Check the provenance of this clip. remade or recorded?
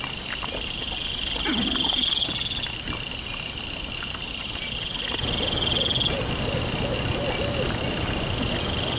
recorded